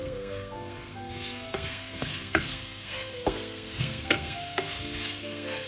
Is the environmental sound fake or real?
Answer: fake